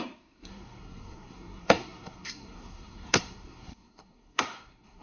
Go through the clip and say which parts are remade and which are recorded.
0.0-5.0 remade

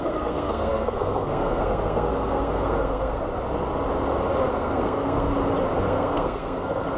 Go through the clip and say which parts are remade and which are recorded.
0.0-3.3 remade; 3.3-4.5 recorded; 4.5-5.3 remade; 5.3-5.8 recorded; 5.8-7.0 remade

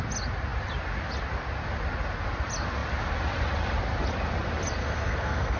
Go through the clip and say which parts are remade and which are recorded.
0.0-4.8 recorded; 4.8-5.6 remade